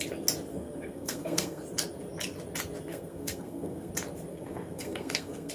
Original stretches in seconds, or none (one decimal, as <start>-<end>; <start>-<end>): 0.0-0.5; 1.6-2.9; 3.9-4.3